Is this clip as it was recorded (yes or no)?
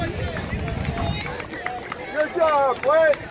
yes